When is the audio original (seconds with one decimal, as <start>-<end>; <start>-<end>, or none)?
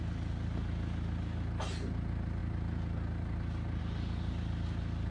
0.0-5.1